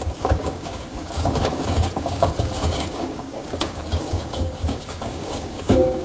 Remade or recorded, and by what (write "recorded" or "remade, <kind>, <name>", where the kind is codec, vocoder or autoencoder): remade, codec, DAC